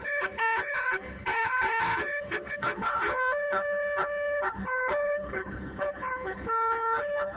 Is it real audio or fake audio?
fake